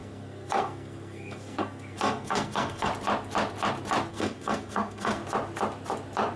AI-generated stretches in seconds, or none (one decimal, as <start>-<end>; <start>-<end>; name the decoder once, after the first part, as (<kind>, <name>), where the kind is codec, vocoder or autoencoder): 0.0-2.9 (codec, SNAC); 4.1-5.2